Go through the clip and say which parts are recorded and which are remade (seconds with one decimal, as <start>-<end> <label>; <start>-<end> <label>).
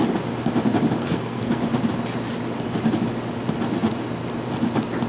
0.0-1.0 recorded; 1.0-1.6 remade; 1.6-5.1 recorded